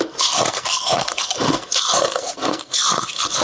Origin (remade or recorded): remade